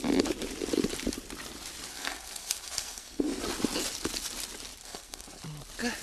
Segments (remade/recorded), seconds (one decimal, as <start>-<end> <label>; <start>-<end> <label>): 0.0-1.9 recorded; 1.9-3.4 remade; 3.4-4.8 recorded; 4.8-5.4 remade; 5.4-6.0 recorded